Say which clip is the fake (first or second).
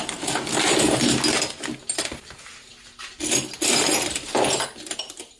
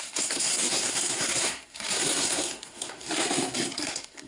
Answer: second